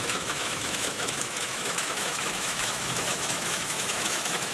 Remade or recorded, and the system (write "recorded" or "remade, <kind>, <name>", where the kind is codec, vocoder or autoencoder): remade, autoencoder, DAC-VAE